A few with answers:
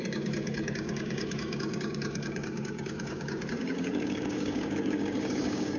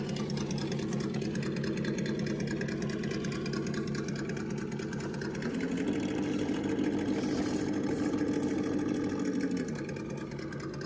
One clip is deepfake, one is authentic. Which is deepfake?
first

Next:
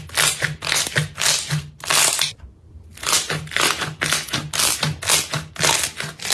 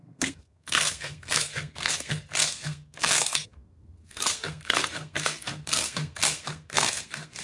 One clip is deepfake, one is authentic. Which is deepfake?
second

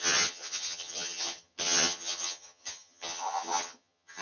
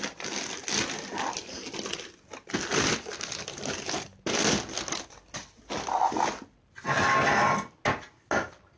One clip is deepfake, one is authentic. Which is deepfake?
first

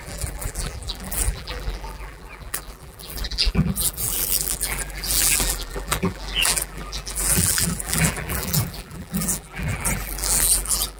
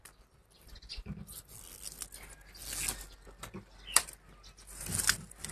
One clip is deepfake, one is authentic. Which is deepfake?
first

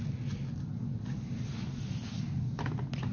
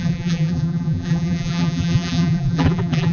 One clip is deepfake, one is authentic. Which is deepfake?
second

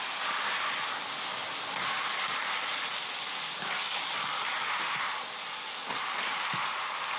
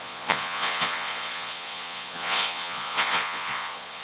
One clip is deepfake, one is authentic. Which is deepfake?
second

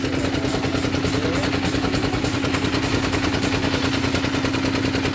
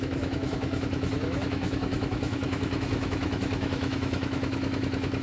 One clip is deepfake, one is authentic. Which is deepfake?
second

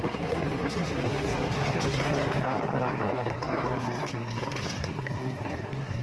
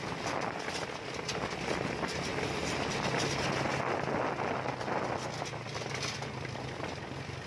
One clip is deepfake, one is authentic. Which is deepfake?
first